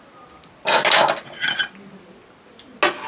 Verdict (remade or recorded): recorded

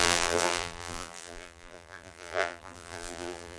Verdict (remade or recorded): remade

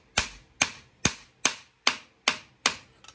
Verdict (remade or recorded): recorded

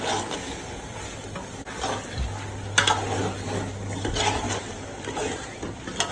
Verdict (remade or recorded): recorded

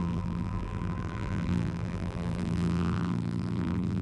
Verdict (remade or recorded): remade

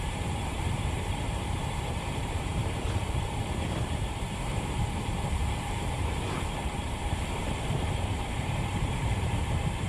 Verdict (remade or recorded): remade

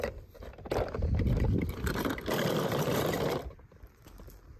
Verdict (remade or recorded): remade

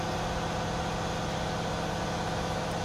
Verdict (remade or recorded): recorded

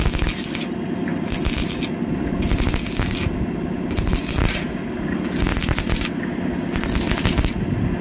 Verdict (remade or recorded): recorded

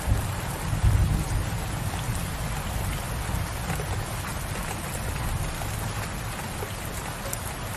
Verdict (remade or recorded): recorded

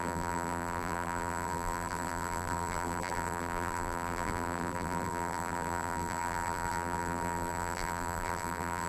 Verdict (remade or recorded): remade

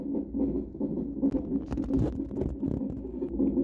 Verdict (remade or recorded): recorded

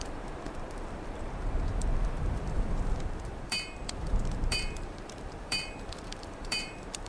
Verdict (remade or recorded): remade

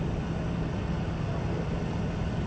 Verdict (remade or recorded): recorded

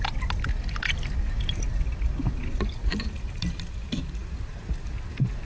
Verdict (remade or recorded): recorded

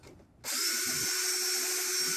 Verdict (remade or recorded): recorded